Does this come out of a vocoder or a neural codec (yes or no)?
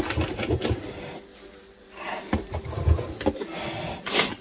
no